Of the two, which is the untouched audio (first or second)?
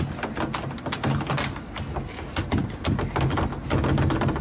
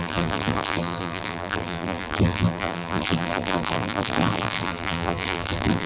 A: first